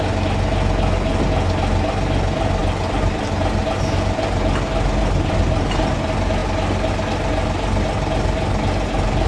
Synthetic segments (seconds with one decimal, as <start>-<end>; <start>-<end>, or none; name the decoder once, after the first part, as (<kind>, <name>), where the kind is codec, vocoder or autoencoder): none